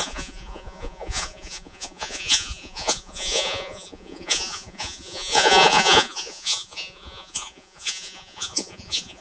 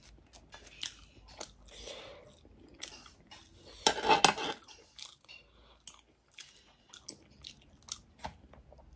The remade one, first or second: first